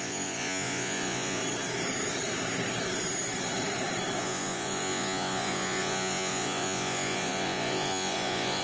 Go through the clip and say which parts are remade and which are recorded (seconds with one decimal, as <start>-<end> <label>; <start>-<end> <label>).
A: 0.0-1.4 remade; 1.4-4.2 recorded; 4.2-8.6 remade